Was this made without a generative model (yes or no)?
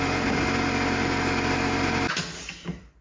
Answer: yes